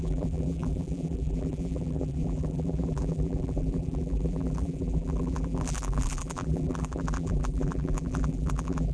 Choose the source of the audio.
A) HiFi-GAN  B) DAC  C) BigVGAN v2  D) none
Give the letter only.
C